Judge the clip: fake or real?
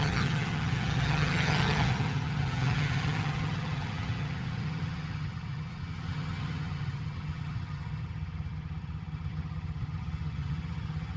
fake